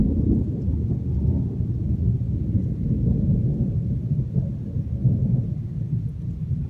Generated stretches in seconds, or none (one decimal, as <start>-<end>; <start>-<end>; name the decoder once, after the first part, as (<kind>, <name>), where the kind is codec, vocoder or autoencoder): none